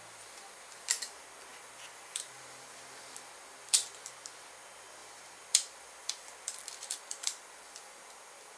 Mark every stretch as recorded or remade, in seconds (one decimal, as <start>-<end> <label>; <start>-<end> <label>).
0.0-1.5 recorded; 1.5-4.1 remade; 4.1-5.0 recorded; 5.0-8.0 remade; 8.0-8.6 recorded